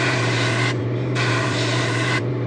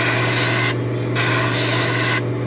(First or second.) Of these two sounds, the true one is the second